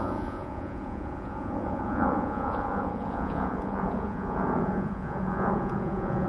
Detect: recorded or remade remade